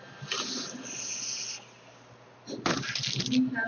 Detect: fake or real real